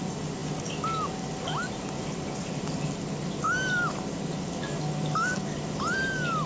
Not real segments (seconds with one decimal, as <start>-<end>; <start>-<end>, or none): none